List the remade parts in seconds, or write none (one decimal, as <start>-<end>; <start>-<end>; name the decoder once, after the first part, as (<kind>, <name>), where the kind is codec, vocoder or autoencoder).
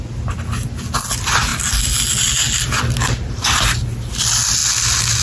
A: none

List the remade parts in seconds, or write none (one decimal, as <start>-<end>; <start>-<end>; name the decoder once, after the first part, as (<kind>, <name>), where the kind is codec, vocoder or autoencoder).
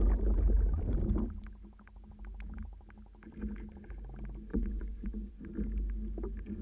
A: 4.5-5.3 (vocoder, Vocos)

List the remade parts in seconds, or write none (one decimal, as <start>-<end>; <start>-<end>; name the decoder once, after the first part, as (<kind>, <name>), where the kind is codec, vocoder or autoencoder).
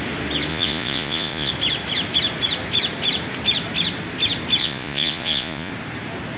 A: 0.5-1.5 (vocoder, Vocos); 4.6-5.7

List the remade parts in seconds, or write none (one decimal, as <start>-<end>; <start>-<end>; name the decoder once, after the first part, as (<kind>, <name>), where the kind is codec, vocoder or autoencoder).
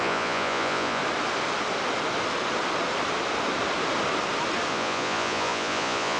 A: 0.0-1.0 (vocoder, Vocos); 4.7-6.2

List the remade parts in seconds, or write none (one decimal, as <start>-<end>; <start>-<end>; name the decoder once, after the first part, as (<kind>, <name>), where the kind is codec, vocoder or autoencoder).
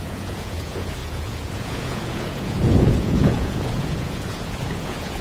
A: 0.0-5.2 (vocoder, Vocos)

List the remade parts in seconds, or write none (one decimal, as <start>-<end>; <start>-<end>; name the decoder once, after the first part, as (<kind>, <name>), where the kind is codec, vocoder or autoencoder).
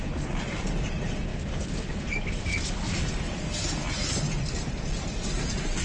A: none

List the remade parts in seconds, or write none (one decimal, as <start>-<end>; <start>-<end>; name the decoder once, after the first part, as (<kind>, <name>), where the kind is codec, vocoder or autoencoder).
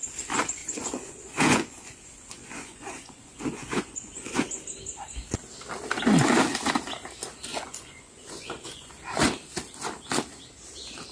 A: 0.6-4.6 (vocoder, Vocos); 7.5-8.9